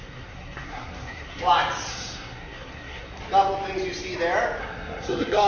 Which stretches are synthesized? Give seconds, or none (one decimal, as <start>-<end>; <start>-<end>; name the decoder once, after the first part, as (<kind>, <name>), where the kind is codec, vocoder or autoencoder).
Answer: 0.0-1.4 (codec, SNAC); 1.9-3.2; 4.6-5.5